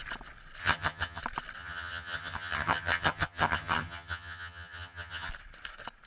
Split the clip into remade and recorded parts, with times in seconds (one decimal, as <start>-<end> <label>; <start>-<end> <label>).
0.0-0.6 recorded; 0.6-1.2 remade; 1.2-1.6 recorded; 1.6-5.3 remade; 5.3-6.1 recorded